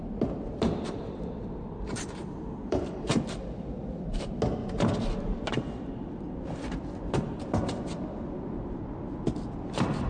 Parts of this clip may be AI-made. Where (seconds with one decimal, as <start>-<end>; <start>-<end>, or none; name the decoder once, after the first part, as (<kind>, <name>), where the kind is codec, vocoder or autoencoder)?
0.5-3.1 (vocoder, BigVGAN v2)